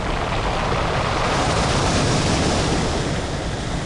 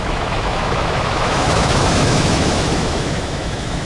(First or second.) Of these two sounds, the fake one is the second